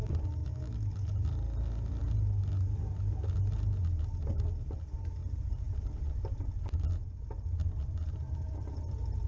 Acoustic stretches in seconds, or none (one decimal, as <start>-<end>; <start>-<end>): 0.0-0.4; 0.9-9.3